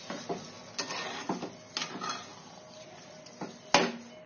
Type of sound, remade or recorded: recorded